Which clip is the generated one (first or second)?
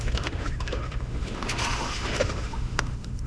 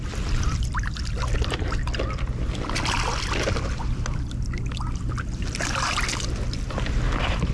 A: first